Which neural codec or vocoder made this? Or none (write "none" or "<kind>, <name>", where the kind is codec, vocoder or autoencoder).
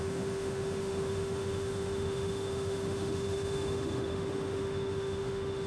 autoencoder, DAC-VAE